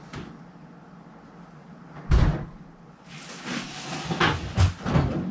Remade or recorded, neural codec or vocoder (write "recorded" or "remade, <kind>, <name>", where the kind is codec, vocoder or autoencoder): recorded